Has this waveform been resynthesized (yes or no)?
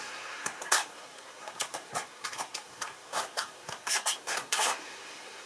yes